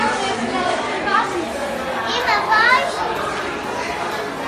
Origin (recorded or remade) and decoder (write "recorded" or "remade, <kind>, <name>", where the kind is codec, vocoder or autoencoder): recorded